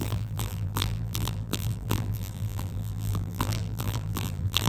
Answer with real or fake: fake